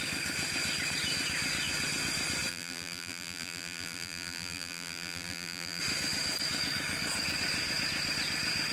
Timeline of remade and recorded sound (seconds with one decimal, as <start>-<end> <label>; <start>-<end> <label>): 0.0-2.5 recorded; 2.5-5.8 remade; 5.8-8.7 recorded